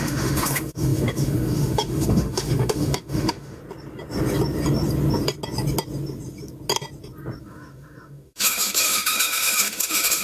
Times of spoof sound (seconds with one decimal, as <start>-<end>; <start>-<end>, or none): 0.0-3.6; 7.4-10.2